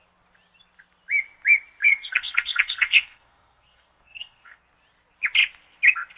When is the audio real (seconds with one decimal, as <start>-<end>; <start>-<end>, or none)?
0.0-1.8; 4.6-6.2